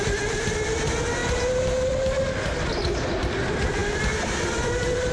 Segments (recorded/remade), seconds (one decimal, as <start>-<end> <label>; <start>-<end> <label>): 0.0-3.8 recorded; 3.8-5.1 remade